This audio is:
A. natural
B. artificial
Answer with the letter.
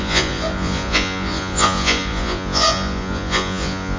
B